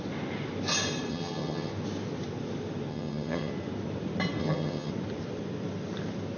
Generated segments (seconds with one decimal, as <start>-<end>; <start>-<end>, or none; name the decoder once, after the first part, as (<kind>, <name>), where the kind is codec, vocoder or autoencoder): 1.1-1.7 (vocoder, HiFi-GAN); 2.9-3.5; 4.4-4.9